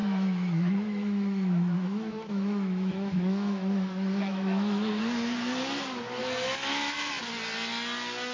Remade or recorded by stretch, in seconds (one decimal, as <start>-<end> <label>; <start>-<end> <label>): 0.0-5.0 remade; 5.0-6.2 recorded; 6.2-7.1 remade; 7.1-8.3 recorded